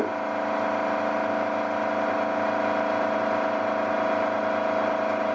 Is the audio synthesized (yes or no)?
no